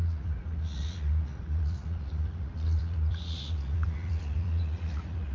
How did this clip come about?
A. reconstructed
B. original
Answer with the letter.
A